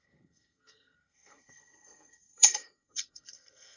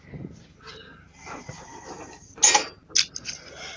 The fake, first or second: first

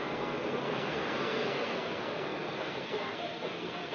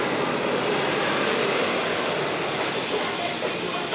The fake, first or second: first